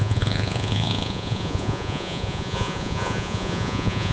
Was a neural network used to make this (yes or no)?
yes